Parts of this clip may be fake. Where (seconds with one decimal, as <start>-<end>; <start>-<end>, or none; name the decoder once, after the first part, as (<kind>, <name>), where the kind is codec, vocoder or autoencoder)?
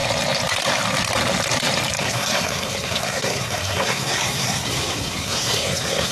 2.0-6.1 (codec, SNAC)